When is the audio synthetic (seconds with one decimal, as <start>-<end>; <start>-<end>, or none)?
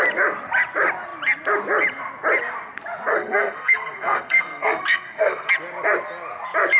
3.1-5.5